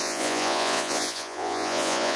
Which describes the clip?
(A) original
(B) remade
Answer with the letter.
B